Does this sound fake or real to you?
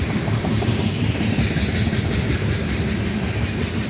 fake